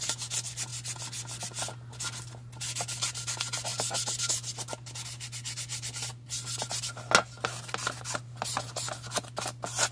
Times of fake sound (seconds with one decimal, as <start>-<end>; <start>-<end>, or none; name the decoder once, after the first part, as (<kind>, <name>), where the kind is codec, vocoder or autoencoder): none